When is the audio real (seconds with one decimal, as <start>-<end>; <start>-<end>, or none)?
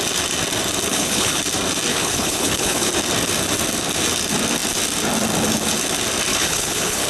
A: 0.0-0.9; 1.4-1.9; 2.9-6.3